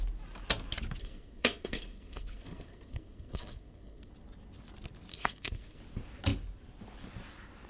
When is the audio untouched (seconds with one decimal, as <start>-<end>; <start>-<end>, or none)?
0.0-1.0; 4.1-5.1; 5.8-7.7